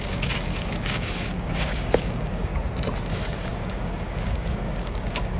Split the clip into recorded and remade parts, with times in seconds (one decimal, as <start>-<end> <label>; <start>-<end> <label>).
0.0-2.5 remade; 2.5-3.1 recorded; 3.1-5.4 remade